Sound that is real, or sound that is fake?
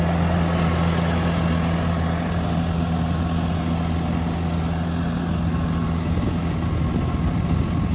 real